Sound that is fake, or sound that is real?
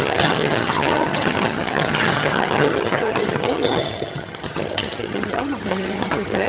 fake